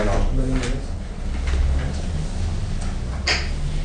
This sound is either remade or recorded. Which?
recorded